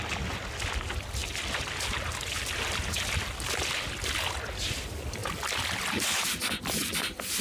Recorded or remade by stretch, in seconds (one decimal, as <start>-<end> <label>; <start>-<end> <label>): 0.0-7.4 recorded